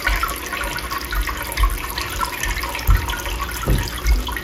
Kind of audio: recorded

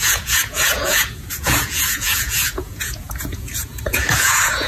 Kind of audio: remade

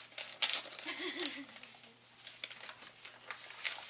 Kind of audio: recorded